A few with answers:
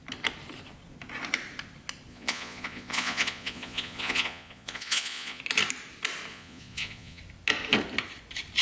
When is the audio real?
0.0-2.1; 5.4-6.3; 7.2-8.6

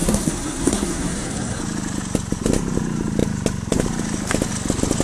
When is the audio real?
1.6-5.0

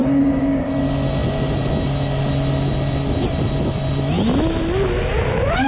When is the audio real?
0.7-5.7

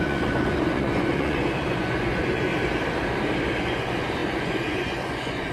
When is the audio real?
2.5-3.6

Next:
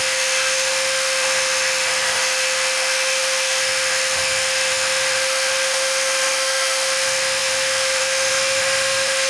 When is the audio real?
none